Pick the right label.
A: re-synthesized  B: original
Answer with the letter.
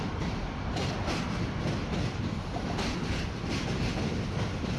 B